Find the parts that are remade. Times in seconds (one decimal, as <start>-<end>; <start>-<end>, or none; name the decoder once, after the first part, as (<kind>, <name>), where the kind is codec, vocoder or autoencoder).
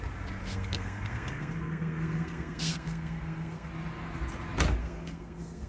0.4-3.7 (codec, SNAC); 4.8-5.7